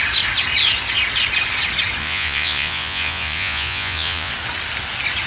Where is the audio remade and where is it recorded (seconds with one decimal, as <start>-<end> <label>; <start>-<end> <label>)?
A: 0.0-2.0 recorded; 2.0-4.3 remade; 4.3-5.3 recorded